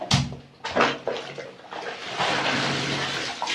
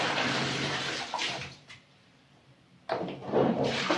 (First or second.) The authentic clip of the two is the first